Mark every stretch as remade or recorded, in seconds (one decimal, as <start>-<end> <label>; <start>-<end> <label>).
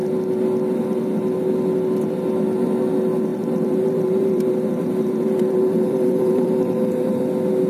0.0-3.3 recorded; 3.3-7.2 remade; 7.2-7.7 recorded